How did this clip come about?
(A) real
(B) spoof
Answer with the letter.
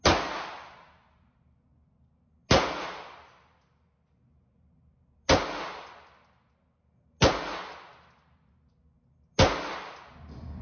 A